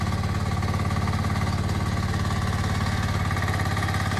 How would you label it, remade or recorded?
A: recorded